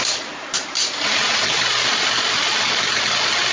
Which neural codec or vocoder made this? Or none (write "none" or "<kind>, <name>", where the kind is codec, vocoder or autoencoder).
none